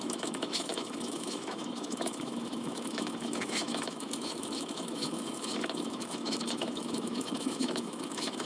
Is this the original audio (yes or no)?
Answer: no